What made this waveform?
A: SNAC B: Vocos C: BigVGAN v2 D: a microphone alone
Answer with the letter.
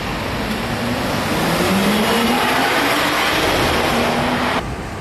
D